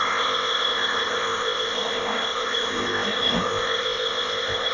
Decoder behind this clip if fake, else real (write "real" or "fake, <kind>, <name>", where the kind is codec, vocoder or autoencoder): fake, codec, ZipCodec